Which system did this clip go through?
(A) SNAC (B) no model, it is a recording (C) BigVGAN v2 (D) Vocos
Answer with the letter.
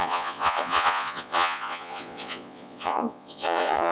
D